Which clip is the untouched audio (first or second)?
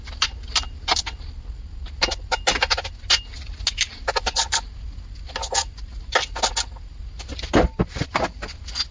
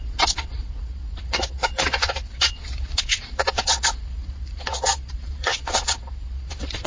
first